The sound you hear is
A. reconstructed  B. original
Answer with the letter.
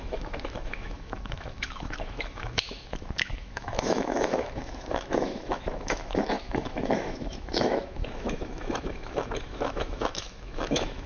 A